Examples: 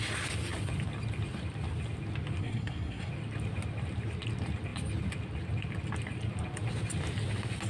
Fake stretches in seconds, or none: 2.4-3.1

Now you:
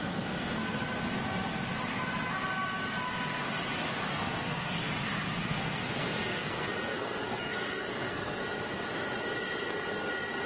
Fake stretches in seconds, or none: 0.0-0.6; 4.1-4.8; 5.4-8.4

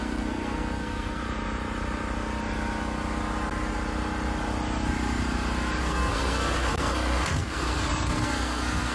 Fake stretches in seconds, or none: 0.0-1.2; 5.8-8.9

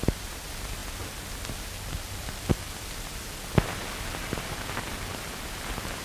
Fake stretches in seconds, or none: none

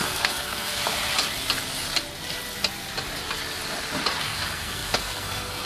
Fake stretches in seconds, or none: 0.0-0.8; 4.2-5.7

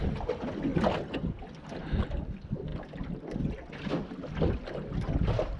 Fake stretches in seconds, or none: none

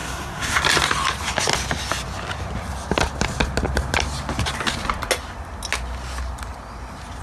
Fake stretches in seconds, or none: 0.0-0.6